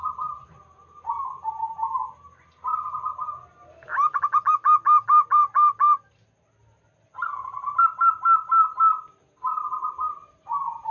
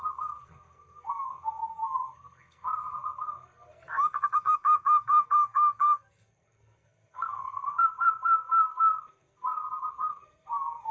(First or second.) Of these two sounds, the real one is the first